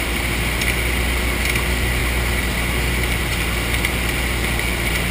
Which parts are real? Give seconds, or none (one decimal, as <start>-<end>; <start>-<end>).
0.0-5.1